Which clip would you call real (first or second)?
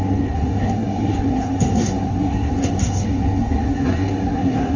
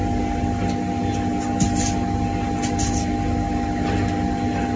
second